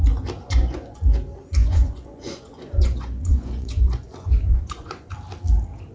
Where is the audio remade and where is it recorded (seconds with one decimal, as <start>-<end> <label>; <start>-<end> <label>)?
0.0-0.4 recorded; 0.4-1.0 remade; 1.0-1.6 recorded; 1.6-5.1 remade; 5.1-5.9 recorded

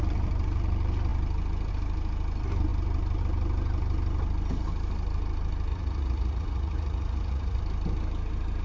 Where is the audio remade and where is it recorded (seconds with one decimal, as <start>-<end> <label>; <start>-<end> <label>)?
0.0-5.7 recorded; 5.7-7.6 remade; 7.6-8.6 recorded

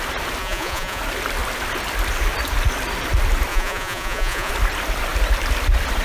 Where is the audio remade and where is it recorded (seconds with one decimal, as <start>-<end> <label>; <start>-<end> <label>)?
0.0-0.4 recorded; 0.4-1.0 remade; 1.0-3.5 recorded; 3.5-4.5 remade; 4.5-6.0 recorded

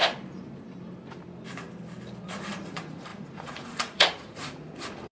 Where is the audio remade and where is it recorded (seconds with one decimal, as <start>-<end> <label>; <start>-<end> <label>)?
0.0-2.3 recorded; 2.3-5.1 remade

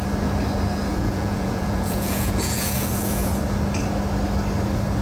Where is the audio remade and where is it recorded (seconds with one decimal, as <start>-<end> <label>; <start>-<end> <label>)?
0.0-0.9 recorded; 0.9-3.3 remade; 3.3-5.0 recorded

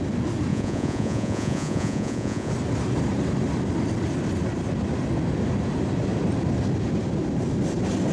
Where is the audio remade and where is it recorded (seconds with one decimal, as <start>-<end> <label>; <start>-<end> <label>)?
0.0-0.5 recorded; 0.5-2.5 remade; 2.5-8.1 recorded